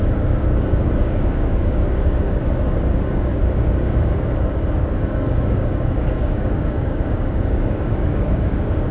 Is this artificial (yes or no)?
yes